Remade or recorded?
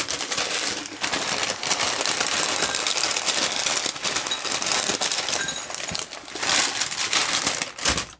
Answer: recorded